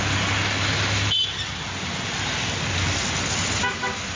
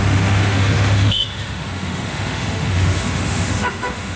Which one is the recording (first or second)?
first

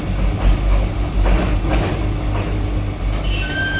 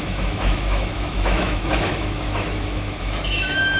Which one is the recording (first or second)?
first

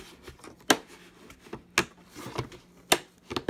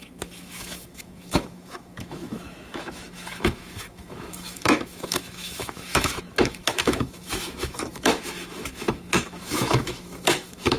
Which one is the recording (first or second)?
first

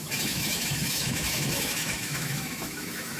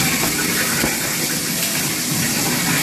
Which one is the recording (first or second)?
second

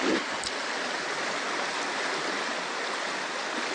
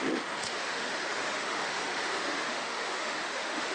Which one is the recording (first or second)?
first